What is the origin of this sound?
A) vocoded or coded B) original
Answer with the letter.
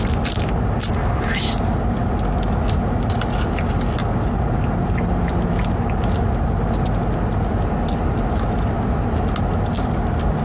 B